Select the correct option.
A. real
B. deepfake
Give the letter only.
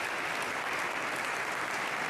A